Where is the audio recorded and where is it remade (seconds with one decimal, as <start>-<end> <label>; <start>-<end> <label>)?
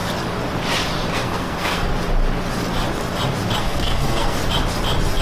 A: 0.0-1.1 recorded; 1.1-1.9 remade; 1.9-3.6 recorded; 3.6-4.4 remade; 4.4-5.2 recorded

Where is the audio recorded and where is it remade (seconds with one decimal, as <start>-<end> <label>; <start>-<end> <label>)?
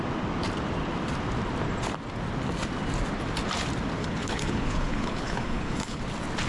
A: 0.0-4.0 recorded; 4.0-6.0 remade; 6.0-6.5 recorded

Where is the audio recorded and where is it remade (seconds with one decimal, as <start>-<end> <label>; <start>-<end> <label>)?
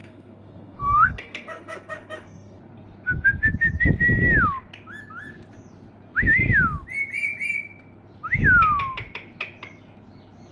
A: 0.0-2.6 remade; 2.6-10.5 recorded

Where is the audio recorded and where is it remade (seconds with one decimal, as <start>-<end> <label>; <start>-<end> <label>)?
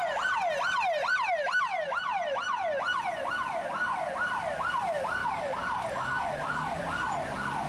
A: 0.0-5.2 recorded; 5.2-5.9 remade; 5.9-7.7 recorded